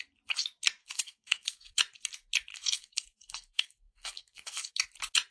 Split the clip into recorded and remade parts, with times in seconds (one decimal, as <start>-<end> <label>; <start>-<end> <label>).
0.0-0.8 recorded; 0.8-1.7 remade; 1.7-2.5 recorded; 2.5-4.7 remade; 4.7-5.3 recorded